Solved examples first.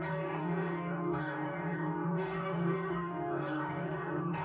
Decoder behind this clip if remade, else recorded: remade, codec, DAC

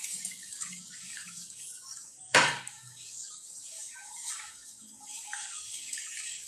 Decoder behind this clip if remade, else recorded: remade, codec, DAC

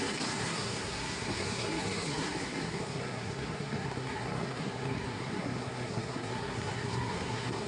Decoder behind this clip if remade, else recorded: remade, codec, SNAC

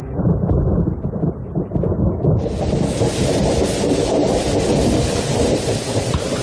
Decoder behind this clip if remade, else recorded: remade, vocoder, BigVGAN v2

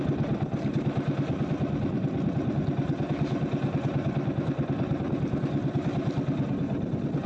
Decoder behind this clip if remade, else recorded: recorded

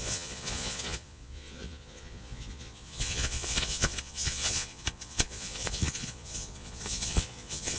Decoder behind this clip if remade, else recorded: remade, vocoder, Vocos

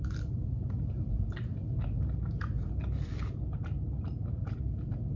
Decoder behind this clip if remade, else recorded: recorded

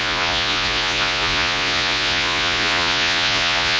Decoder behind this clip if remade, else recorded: remade, vocoder, Vocos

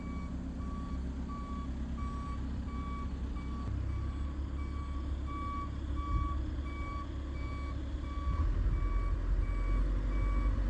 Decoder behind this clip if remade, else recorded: recorded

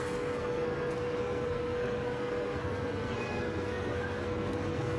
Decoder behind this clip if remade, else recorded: remade, codec, SNAC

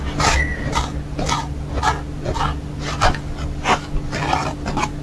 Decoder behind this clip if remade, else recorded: recorded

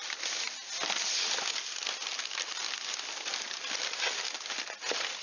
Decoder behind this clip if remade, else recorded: recorded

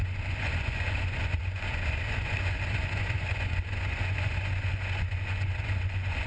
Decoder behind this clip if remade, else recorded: remade, vocoder, Vocos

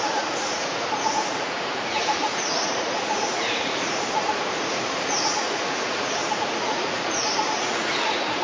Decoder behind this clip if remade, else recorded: remade, vocoder, Vocos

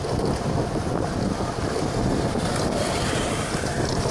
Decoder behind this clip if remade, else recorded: recorded